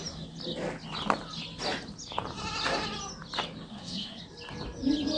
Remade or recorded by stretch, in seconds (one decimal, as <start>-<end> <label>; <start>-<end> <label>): 0.0-3.7 recorded; 3.7-4.2 remade; 4.2-5.2 recorded